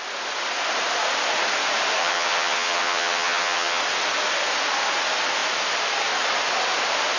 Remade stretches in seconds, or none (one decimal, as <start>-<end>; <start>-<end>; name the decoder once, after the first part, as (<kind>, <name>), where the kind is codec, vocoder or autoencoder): 2.0-3.8 (vocoder, HiFi-GAN)